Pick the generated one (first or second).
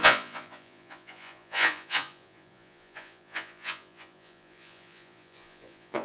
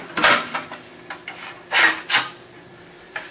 first